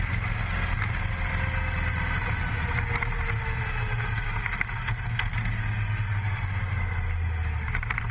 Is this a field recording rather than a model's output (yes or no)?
yes